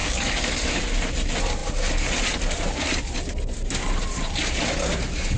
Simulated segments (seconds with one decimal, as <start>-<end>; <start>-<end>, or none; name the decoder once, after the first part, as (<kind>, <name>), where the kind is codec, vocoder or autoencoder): 0.0-0.8 (codec, DAC)